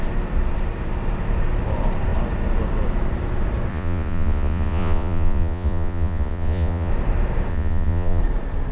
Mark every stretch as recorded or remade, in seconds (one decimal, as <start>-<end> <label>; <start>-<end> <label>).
0.0-3.7 recorded; 3.7-6.9 remade; 6.9-7.5 recorded; 7.5-8.2 remade; 8.2-8.7 recorded